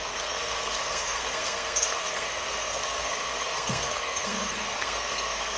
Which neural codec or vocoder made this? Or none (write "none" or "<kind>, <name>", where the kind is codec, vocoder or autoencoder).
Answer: codec, SNAC